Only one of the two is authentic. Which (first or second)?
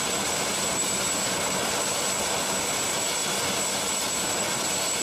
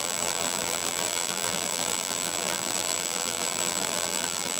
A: first